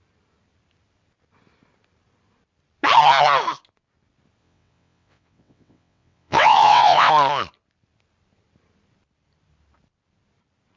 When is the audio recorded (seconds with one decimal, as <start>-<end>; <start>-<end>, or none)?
0.0-4.4; 7.1-10.8